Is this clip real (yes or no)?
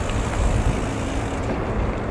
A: yes